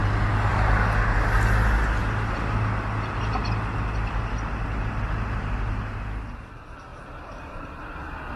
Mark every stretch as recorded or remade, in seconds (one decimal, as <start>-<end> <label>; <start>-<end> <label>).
0.0-6.9 recorded; 6.9-7.8 remade; 7.8-8.4 recorded